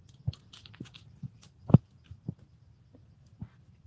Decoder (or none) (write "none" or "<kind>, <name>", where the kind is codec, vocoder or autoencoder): none